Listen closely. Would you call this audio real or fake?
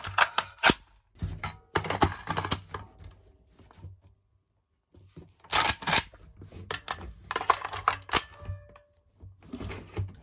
real